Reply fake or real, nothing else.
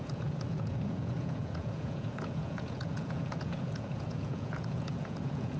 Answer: fake